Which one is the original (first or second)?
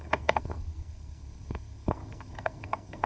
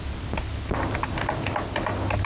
second